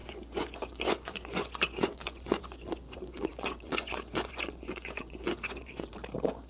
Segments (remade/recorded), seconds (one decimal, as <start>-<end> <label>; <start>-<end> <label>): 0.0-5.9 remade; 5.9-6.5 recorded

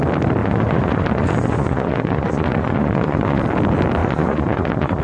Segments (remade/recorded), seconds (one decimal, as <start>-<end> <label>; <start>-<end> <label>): 0.0-0.4 recorded; 0.4-3.4 remade; 3.4-4.0 recorded; 4.0-5.0 remade

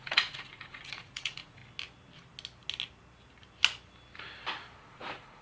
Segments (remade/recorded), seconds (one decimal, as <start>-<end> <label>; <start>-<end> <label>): 0.0-1.6 remade; 1.6-4.8 recorded; 4.8-5.4 remade

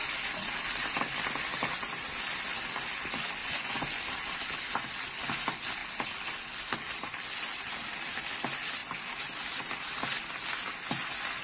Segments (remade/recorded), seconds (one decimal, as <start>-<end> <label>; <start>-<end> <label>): 0.0-3.4 recorded; 3.4-4.0 remade; 4.0-11.4 recorded

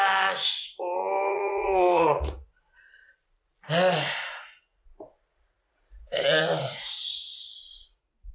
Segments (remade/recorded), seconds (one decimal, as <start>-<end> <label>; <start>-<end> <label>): 0.0-1.3 recorded; 1.3-3.1 remade; 3.1-4.7 recorded; 4.7-8.3 remade